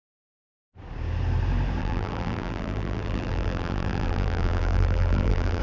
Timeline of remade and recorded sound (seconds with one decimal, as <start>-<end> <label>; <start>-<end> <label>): 0.0-1.8 recorded; 1.8-5.6 remade